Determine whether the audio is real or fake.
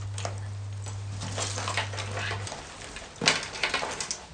real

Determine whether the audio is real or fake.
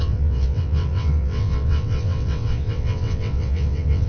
fake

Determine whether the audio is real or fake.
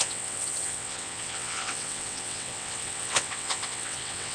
fake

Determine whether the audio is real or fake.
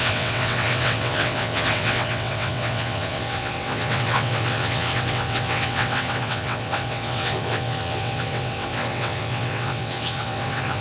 fake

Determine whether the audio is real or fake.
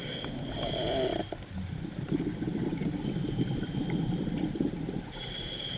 real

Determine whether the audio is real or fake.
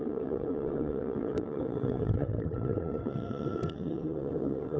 fake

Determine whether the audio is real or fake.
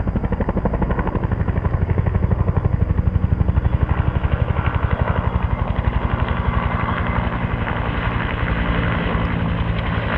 real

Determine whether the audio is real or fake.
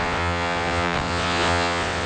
fake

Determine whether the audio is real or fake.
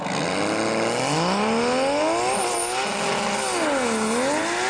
real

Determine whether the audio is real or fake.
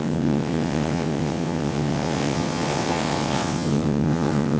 fake